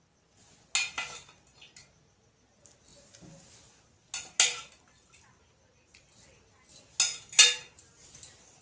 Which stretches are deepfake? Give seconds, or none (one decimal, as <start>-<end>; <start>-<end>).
none